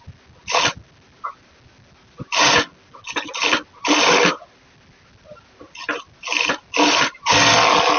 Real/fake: real